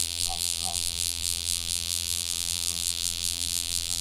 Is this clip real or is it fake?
fake